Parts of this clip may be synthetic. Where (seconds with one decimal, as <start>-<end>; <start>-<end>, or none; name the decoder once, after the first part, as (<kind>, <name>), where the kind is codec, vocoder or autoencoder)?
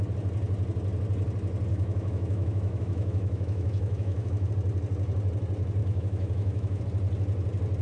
1.7-4.5 (autoencoder, DAC-VAE); 5.8-6.8